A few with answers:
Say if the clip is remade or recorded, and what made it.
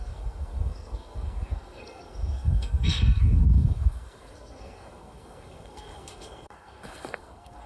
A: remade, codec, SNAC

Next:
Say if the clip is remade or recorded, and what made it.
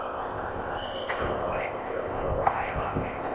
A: remade, codec, ZipCodec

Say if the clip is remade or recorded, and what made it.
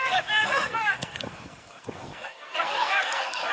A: remade, codec, SNAC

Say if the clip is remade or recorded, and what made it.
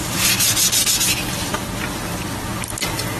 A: recorded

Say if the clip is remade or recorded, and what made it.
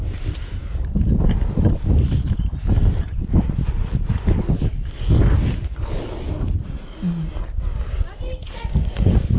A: recorded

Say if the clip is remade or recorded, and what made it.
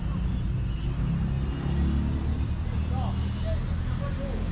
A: recorded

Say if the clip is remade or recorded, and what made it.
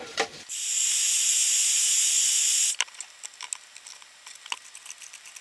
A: recorded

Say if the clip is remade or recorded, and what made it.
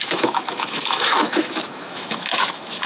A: remade, autoencoder, DAC-VAE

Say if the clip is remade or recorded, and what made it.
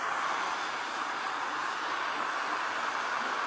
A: recorded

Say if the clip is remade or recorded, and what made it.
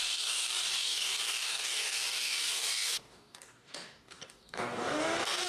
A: remade, codec, DAC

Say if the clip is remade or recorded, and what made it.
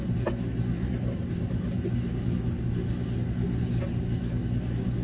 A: recorded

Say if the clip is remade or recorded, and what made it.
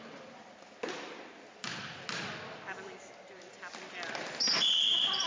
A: recorded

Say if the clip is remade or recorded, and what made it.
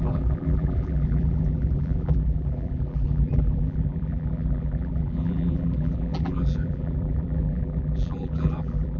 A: remade, vocoder, BigVGAN v2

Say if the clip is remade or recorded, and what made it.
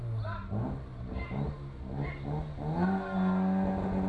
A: recorded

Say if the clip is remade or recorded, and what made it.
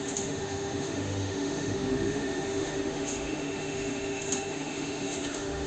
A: remade, autoencoder, DAC-VAE